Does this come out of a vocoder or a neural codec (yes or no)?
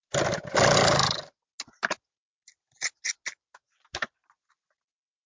no